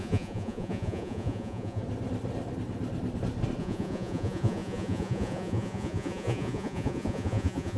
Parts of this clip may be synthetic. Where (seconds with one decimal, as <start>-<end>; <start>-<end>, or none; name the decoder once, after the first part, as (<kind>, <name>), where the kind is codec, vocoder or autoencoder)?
0.0-1.8 (vocoder, Vocos); 3.6-7.8